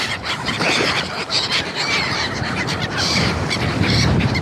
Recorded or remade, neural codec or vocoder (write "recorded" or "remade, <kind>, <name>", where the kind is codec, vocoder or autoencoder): remade, vocoder, BigVGAN v2